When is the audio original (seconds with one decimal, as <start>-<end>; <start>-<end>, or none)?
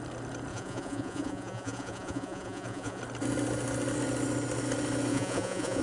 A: 0.0-0.5; 3.0-5.1